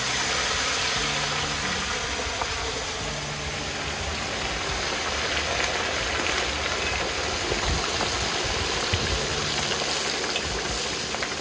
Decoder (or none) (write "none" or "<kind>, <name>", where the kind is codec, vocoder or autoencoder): none